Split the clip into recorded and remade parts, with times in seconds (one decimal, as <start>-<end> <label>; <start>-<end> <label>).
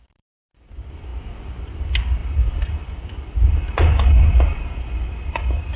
0.0-1.1 remade; 1.1-1.7 recorded; 1.7-2.2 remade; 2.2-4.8 recorded; 4.8-5.8 remade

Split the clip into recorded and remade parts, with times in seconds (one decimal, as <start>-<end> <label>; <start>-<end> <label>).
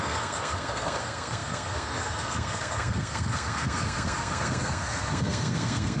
0.0-6.0 remade